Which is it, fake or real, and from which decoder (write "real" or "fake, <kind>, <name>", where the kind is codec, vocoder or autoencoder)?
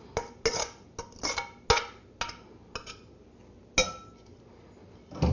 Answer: real